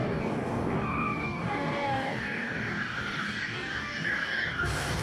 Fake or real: fake